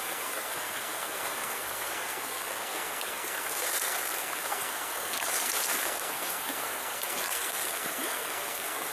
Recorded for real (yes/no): no